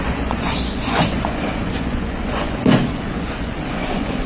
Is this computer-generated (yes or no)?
yes